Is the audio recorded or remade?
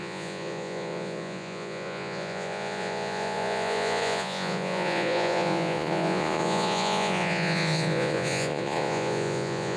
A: remade